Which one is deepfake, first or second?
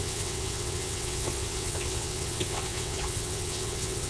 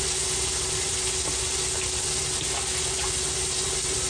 first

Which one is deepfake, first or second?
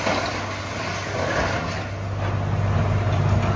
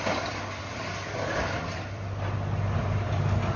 second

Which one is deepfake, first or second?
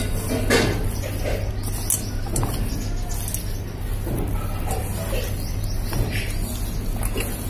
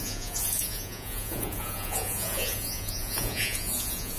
second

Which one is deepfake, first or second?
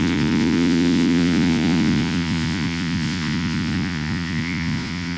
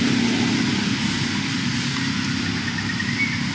first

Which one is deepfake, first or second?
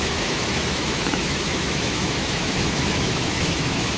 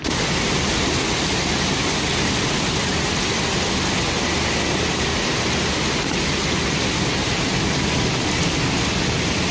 first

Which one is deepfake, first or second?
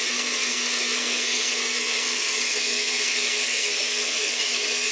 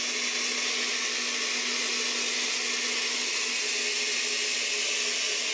first